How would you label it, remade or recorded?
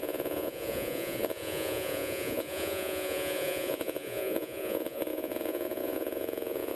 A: remade